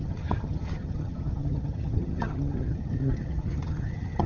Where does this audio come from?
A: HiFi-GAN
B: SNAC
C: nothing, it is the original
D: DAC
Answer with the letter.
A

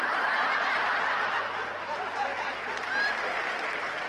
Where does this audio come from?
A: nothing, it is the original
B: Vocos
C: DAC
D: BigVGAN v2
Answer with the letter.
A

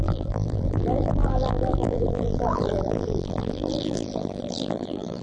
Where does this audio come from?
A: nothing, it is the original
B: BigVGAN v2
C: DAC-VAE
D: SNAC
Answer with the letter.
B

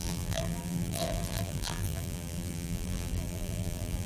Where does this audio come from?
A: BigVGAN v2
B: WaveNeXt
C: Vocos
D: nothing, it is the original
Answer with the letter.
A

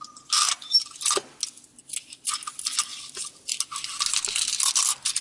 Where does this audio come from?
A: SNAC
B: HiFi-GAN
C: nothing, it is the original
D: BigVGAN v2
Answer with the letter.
C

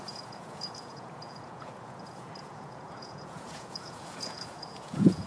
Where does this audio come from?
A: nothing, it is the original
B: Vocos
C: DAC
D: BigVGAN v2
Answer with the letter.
B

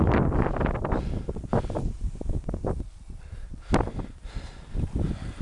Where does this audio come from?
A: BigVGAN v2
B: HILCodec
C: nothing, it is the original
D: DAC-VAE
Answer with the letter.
C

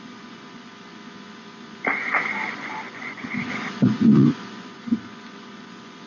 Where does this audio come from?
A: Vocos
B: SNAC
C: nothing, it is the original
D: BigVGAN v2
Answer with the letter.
A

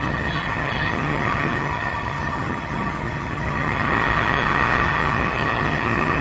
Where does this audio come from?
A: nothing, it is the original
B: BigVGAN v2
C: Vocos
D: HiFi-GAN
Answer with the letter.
D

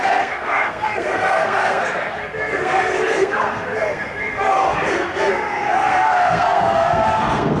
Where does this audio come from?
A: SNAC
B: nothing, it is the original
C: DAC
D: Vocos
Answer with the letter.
A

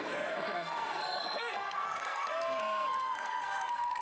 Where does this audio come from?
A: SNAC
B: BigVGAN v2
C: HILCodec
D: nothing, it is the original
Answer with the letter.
A